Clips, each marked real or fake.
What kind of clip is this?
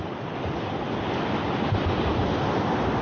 real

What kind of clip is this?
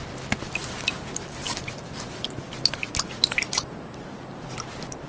real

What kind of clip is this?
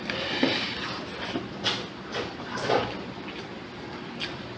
real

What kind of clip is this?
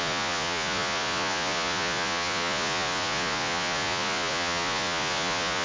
fake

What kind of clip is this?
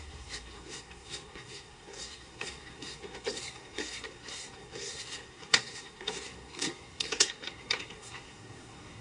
fake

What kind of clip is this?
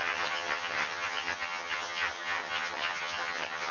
fake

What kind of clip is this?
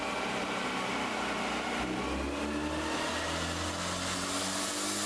real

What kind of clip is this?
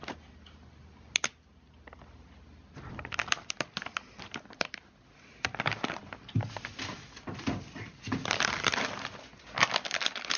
real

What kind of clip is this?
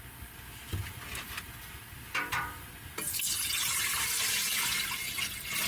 real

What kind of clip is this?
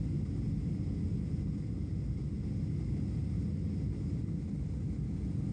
real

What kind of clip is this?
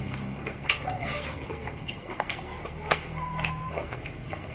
fake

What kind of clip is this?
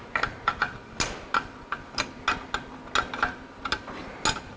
real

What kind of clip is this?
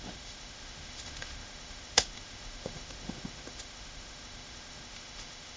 fake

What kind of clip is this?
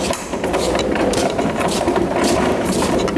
fake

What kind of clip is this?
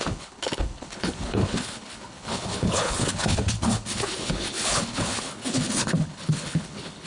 fake